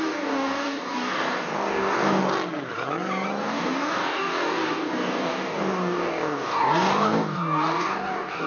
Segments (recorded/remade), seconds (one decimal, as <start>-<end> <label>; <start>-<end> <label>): 0.0-2.2 remade; 2.2-3.4 recorded; 3.4-8.5 remade